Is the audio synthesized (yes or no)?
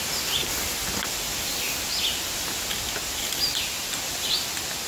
no